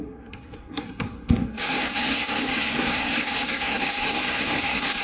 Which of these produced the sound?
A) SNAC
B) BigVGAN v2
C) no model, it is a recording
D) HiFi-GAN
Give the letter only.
A